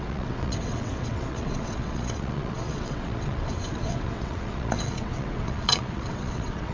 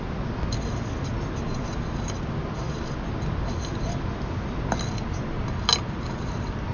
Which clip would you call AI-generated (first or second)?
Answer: first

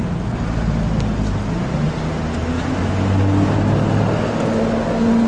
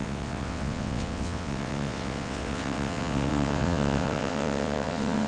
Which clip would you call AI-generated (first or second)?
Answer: second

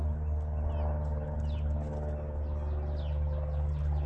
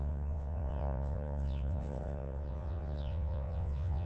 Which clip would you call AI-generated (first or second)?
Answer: second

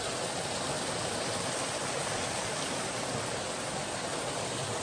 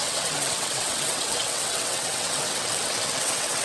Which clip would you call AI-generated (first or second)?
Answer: second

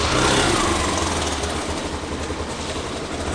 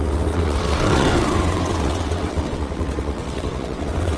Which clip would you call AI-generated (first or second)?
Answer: second